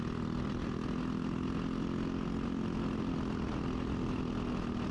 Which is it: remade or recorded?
recorded